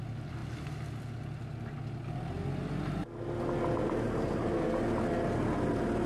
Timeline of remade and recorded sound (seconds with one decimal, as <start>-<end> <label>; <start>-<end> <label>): 0.0-6.1 recorded